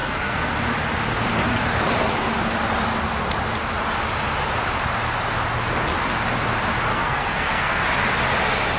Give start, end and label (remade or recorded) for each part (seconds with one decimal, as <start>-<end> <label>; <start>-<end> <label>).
0.0-0.5 remade; 0.5-6.9 recorded; 6.9-7.8 remade; 7.8-8.8 recorded